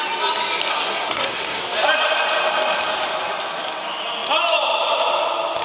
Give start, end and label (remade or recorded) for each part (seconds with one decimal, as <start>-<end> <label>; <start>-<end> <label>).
0.0-0.7 recorded; 0.7-1.6 remade; 1.6-5.6 recorded